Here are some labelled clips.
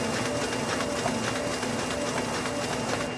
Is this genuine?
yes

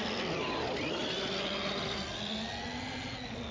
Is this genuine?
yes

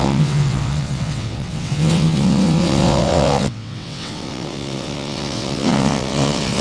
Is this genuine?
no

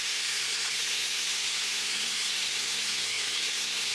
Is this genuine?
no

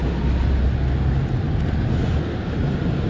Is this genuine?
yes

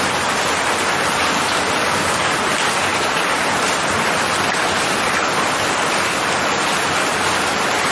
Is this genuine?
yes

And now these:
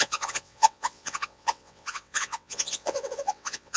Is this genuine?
no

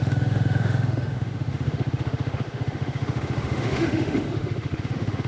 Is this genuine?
no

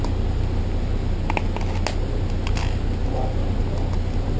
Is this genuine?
yes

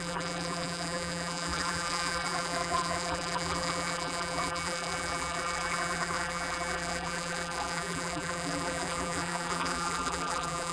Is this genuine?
no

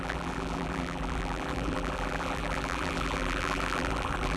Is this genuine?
no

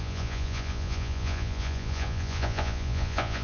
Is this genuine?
no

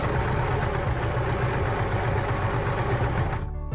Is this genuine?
yes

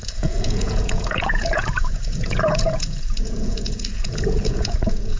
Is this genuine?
no